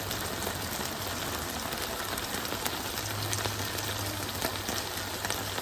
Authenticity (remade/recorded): recorded